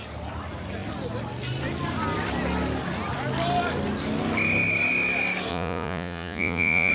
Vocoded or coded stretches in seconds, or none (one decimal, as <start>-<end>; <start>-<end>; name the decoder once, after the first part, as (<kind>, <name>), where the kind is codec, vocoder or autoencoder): 5.5-6.9 (vocoder, Vocos)